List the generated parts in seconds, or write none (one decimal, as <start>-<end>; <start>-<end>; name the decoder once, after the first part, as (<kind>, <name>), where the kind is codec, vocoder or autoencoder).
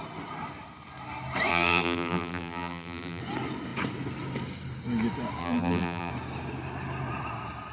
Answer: 1.5-3.2 (vocoder, BigVGAN v2); 5.4-6.1